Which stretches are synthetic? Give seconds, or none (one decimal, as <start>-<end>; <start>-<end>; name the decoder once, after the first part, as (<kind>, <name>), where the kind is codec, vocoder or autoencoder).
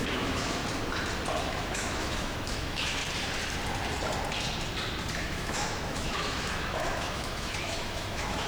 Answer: 0.0-0.6 (autoencoder, DAC-VAE); 1.4-3.0; 5.1-8.5